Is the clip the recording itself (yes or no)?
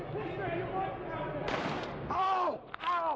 yes